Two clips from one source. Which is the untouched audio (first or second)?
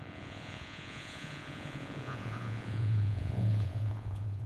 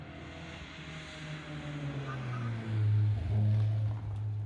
second